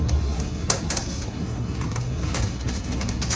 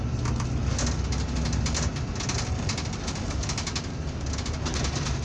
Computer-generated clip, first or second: first